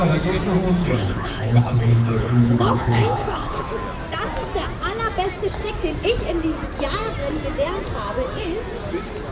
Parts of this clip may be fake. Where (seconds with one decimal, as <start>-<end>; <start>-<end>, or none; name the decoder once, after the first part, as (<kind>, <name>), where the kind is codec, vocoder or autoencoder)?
0.8-3.6 (codec, HILCodec)

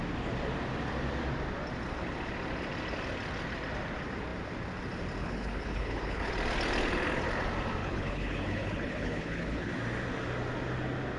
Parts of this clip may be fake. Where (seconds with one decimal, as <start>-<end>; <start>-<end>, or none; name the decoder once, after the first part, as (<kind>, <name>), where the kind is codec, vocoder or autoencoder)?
5.2-6.3 (codec, HILCodec); 7.8-9.7

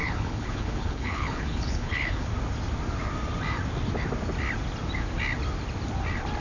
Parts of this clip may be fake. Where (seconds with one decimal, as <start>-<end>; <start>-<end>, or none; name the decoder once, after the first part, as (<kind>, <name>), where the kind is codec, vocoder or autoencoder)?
0.0-2.3 (codec, HILCodec)

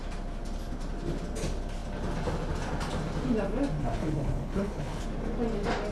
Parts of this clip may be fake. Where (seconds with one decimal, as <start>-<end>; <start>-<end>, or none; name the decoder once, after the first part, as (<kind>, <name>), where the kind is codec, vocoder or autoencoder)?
3.8-5.0 (codec, HILCodec)

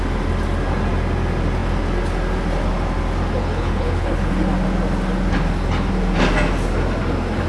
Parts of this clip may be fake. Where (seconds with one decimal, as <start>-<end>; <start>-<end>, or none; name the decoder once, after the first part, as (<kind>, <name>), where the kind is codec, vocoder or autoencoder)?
3.4-4.3 (codec, HILCodec)

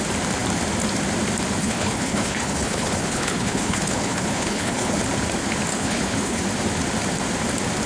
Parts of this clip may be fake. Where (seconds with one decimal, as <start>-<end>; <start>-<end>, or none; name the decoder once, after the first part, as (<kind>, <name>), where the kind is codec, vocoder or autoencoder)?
1.6-5.0 (codec, HILCodec); 5.7-6.4